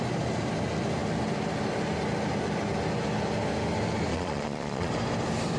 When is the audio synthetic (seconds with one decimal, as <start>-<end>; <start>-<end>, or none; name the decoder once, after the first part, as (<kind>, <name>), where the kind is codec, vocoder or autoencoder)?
4.1-4.9 (vocoder, Vocos)